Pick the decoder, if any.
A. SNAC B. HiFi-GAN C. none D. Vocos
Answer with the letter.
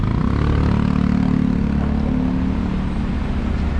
C